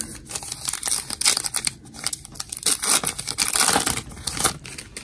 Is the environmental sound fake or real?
real